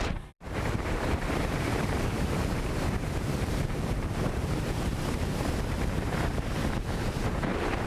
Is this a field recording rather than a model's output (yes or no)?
no